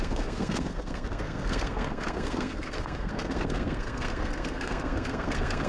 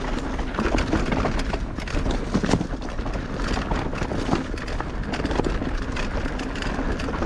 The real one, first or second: second